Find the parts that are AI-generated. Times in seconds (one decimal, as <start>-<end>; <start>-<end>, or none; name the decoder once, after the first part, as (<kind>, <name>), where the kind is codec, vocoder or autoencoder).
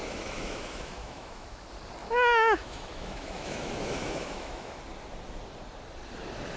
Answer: 0.0-1.6 (autoencoder, DAC-VAE); 2.0-4.8